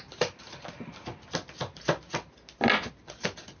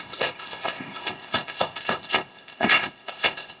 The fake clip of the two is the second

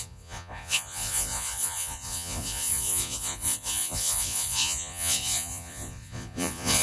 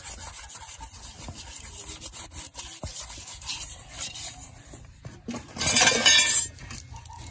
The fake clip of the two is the first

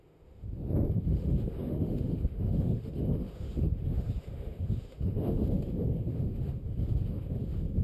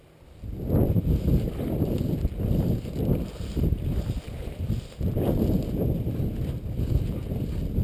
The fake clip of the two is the first